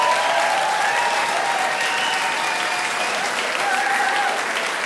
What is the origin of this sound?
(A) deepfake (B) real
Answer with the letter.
B